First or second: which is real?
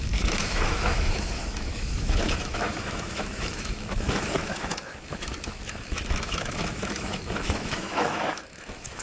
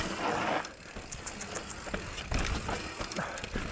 second